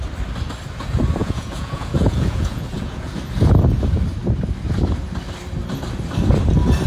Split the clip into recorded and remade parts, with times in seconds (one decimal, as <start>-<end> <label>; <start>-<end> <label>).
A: 0.0-1.2 recorded; 1.2-3.2 remade; 3.2-6.9 recorded